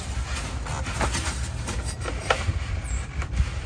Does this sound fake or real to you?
real